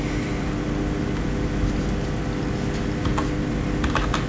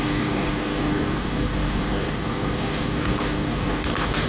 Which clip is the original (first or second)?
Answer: first